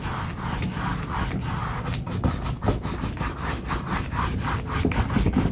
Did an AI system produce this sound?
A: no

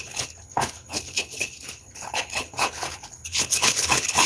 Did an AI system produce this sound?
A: yes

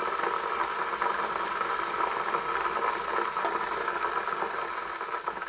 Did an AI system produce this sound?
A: no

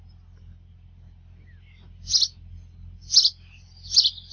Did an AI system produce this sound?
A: no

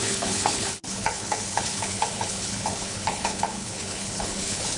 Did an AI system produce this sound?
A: yes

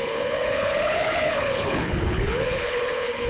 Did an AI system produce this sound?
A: yes